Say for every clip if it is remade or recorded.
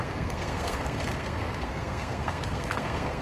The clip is remade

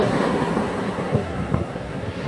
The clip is remade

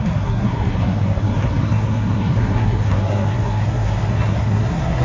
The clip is remade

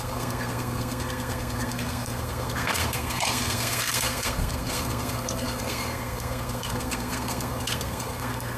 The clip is remade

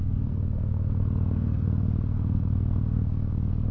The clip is remade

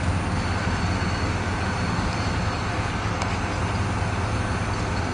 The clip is recorded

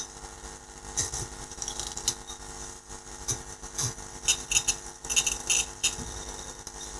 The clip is recorded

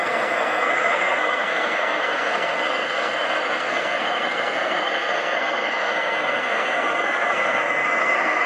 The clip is remade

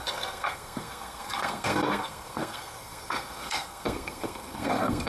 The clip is remade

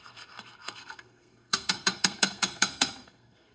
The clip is remade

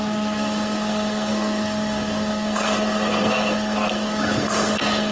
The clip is remade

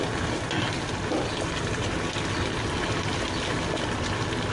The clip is recorded